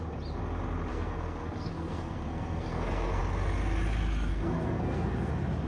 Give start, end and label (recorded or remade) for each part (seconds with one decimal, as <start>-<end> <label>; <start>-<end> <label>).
0.0-0.9 recorded; 0.9-3.2 remade; 3.2-4.3 recorded; 4.3-5.3 remade; 5.3-5.7 recorded